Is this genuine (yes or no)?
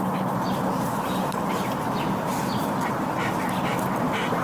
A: yes